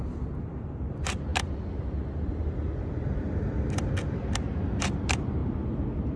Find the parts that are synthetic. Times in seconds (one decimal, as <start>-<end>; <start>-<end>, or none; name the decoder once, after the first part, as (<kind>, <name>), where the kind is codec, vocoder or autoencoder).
none